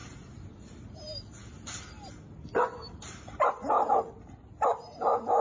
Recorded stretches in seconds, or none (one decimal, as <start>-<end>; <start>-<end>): 0.0-5.4